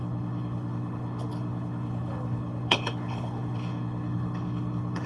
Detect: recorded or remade remade